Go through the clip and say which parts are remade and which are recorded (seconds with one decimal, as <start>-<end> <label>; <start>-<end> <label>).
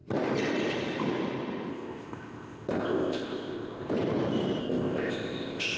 0.0-1.7 recorded; 1.7-3.9 remade; 3.9-4.6 recorded; 4.6-5.8 remade